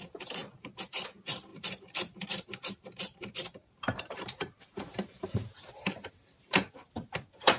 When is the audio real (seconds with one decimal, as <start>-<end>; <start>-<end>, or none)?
none